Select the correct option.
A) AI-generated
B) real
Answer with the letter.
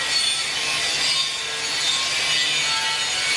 B